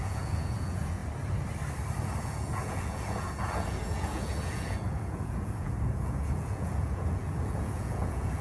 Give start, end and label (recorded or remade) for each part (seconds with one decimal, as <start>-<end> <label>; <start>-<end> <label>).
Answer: 0.0-1.0 remade; 1.0-2.2 recorded; 2.2-8.4 remade